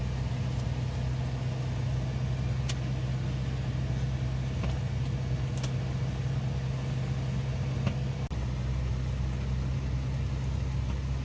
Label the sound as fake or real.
real